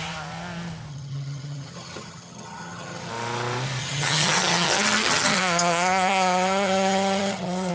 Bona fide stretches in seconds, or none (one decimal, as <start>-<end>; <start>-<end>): 0.0-0.9; 3.1-3.8